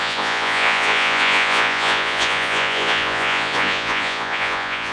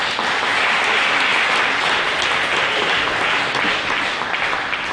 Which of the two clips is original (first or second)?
second